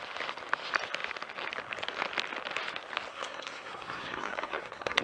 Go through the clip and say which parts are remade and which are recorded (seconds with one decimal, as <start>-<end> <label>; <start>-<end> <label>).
0.0-3.1 recorded; 3.1-5.0 remade